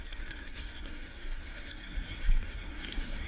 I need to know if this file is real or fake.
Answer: fake